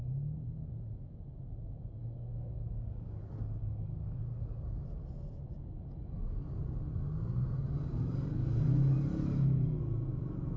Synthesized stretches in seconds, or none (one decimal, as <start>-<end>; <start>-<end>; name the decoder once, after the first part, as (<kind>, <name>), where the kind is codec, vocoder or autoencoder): 2.0-3.2 (codec, DAC); 3.6-4.2